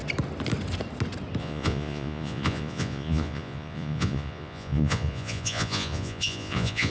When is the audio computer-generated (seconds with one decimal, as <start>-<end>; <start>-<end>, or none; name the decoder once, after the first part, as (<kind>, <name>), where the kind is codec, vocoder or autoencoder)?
1.4-6.9 (vocoder, Vocos)